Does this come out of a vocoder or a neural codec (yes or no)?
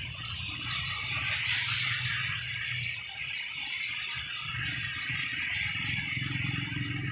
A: no